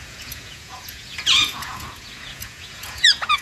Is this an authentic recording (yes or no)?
no